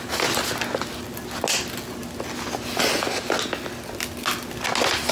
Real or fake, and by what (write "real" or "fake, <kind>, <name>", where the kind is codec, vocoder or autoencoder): real